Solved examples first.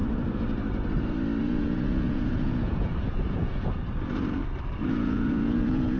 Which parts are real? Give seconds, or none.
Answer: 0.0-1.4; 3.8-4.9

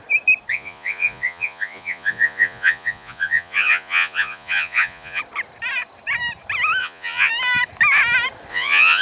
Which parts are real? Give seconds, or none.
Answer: 0.0-0.5; 5.2-6.8; 7.3-8.5

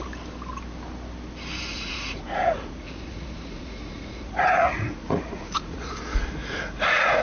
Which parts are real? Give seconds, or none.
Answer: 0.0-1.7; 6.0-6.4

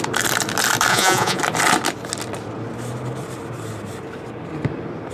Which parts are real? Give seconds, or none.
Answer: 0.0-0.9; 1.4-5.1

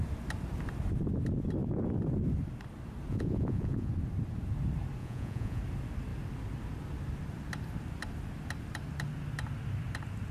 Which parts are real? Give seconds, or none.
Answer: 0.0-3.1; 3.9-5.0; 5.6-10.3

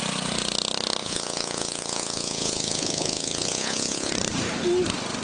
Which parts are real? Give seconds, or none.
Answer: 0.0-1.0; 4.1-5.2